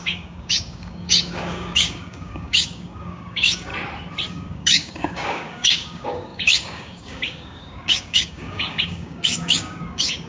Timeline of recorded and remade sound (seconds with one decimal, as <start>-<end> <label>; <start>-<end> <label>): 0.0-3.7 remade; 3.7-4.3 recorded; 4.3-10.3 remade